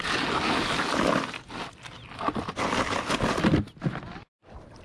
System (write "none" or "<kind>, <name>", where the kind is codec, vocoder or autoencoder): none